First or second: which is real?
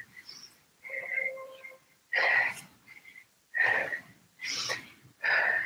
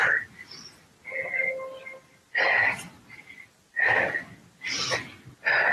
second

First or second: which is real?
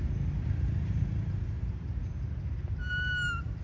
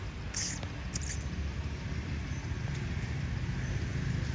second